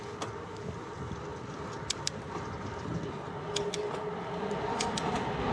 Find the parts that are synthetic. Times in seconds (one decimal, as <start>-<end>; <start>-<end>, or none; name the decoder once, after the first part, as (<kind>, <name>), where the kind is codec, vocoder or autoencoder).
none